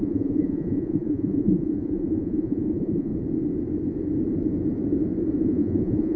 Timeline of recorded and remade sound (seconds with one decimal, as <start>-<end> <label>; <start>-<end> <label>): 0.0-3.1 remade; 3.1-5.4 recorded; 5.4-6.2 remade